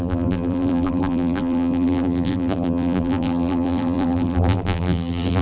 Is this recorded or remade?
remade